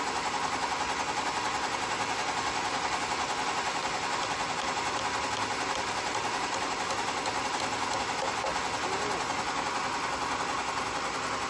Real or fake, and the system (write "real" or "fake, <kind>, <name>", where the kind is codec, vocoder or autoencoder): real